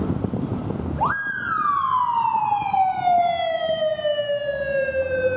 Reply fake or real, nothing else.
real